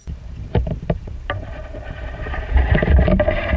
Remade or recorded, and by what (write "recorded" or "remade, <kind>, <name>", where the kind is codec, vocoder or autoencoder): remade, vocoder, BigVGAN v2